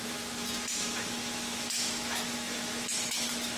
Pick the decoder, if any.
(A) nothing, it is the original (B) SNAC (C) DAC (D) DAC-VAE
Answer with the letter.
D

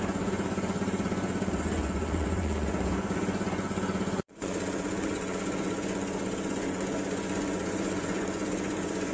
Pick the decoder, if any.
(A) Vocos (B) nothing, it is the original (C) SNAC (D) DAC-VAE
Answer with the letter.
A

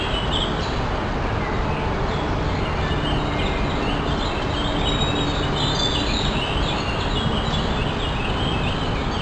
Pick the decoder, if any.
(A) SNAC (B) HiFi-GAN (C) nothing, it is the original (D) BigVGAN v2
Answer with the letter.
C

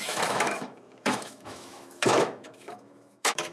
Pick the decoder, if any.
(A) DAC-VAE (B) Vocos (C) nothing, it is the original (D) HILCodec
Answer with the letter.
A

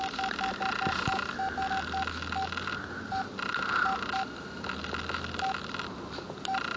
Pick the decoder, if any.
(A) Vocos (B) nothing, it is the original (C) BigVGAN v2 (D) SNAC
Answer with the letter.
B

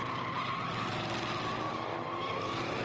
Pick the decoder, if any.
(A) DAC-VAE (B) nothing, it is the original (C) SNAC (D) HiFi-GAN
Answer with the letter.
B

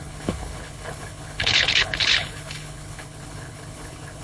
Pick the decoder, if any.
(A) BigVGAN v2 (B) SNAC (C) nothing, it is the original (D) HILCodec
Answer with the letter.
D